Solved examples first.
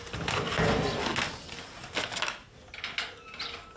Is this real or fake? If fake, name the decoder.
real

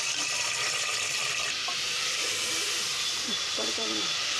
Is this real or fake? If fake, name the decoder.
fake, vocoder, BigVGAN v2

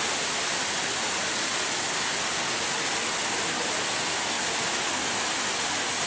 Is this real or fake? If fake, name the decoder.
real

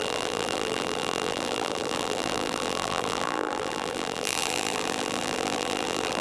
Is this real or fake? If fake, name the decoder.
fake, vocoder, BigVGAN v2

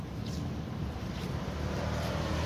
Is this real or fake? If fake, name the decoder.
fake, vocoder, BigVGAN v2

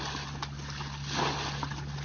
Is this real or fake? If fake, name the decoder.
real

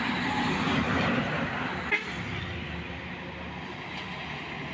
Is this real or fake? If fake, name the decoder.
real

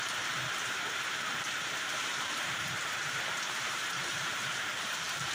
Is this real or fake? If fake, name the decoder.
fake, vocoder, BigVGAN v2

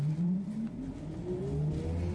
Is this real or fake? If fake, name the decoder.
real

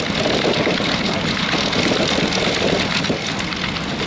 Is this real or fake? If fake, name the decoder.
real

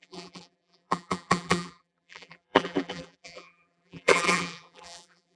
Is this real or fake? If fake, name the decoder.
fake, vocoder, BigVGAN v2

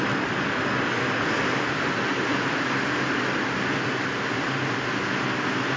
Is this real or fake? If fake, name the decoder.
real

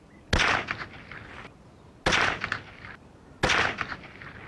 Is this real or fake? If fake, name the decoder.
real